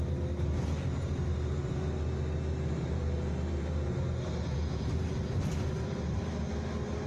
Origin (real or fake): real